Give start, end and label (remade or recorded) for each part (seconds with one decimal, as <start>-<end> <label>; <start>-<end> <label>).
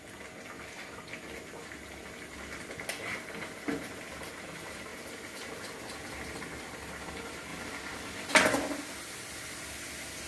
0.0-10.3 recorded